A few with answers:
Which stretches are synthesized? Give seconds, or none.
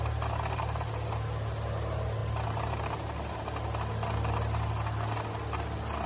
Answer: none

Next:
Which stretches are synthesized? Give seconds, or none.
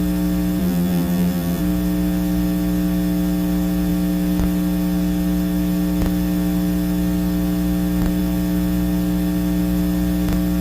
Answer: 0.6-1.6 (vocoder, BigVGAN v2)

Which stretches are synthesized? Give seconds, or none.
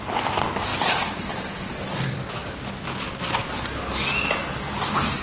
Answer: none